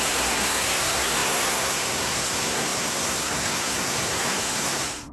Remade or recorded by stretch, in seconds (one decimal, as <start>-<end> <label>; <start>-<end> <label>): 0.0-5.1 remade